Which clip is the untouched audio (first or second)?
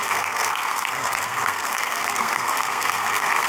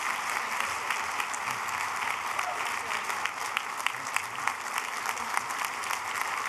second